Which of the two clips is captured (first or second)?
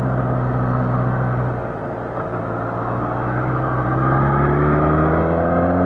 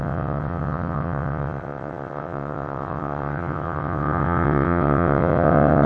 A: first